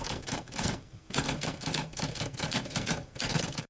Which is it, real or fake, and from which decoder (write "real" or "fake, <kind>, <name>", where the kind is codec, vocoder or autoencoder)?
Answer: fake, codec, SNAC